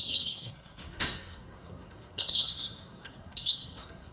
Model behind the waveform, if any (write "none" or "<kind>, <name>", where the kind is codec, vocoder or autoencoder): codec, SNAC